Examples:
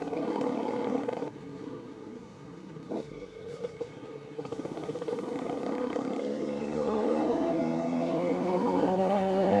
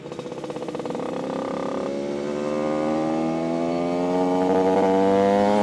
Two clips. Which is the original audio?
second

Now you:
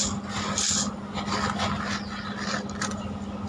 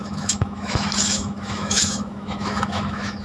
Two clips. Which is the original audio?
first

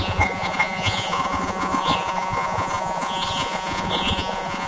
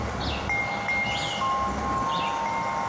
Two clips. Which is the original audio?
second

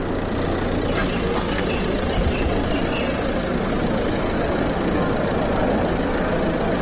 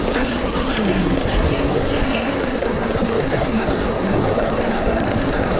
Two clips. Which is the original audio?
first